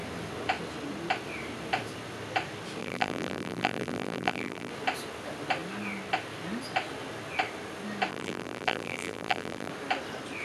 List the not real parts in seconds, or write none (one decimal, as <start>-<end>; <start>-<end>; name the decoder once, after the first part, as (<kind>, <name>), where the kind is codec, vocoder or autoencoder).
2.8-4.7 (vocoder, BigVGAN v2); 8.1-9.7